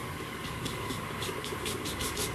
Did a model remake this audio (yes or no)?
yes